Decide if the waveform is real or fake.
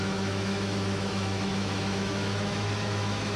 fake